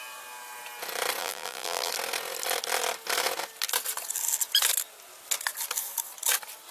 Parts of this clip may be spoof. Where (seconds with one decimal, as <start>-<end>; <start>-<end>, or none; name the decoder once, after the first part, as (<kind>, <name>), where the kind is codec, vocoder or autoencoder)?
1.2-1.9 (vocoder, BigVGAN v2)